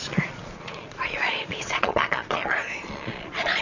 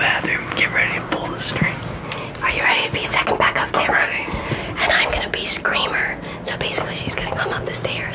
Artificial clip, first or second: first